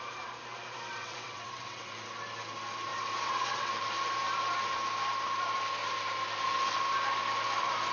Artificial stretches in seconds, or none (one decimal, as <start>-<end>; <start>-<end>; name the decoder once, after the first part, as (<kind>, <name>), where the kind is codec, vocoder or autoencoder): 1.0-1.9 (vocoder, WaveNeXt); 2.9-3.7